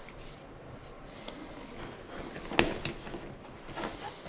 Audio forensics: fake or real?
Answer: real